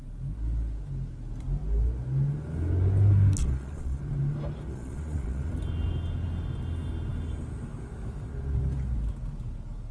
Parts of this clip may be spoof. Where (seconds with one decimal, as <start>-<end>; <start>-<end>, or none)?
3.4-4.0; 4.7-5.5